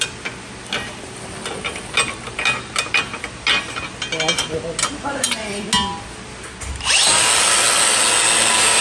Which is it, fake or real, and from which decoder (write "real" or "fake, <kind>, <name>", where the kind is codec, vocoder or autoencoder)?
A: real